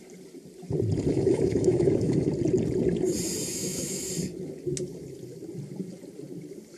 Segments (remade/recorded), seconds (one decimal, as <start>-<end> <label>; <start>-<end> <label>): 0.0-1.1 recorded; 1.1-2.3 remade; 2.3-3.5 recorded; 3.5-4.1 remade; 4.1-6.8 recorded

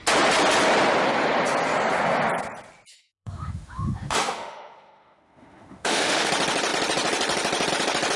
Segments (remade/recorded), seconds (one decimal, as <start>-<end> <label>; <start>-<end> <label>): 0.0-2.9 recorded; 2.9-6.3 remade; 6.3-8.2 recorded

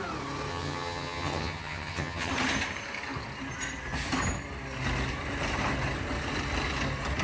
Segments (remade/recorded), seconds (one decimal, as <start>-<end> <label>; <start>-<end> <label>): 0.0-0.5 recorded; 0.5-2.3 remade; 2.3-7.2 recorded

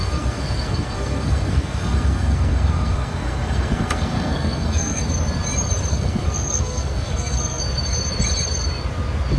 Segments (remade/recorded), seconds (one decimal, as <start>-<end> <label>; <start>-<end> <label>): 0.0-5.0 remade; 5.0-5.9 recorded; 5.9-7.6 remade; 7.6-9.4 recorded

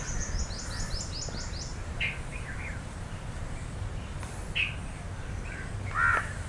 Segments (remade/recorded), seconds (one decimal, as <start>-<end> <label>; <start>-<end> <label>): 0.0-1.7 recorded; 1.7-4.4 remade; 4.4-4.9 recorded; 4.9-5.7 remade; 5.7-6.5 recorded